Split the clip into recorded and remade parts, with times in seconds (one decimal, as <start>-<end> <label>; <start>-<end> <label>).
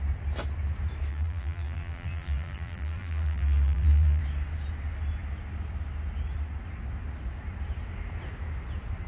0.0-1.1 recorded; 1.1-4.2 remade; 4.2-9.1 recorded